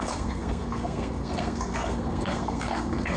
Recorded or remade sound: remade